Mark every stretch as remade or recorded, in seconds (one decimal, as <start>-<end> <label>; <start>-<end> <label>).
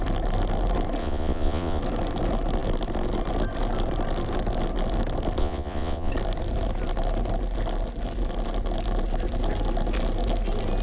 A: 0.0-1.0 recorded; 1.0-1.8 remade; 1.8-5.4 recorded; 5.4-6.1 remade; 6.1-10.8 recorded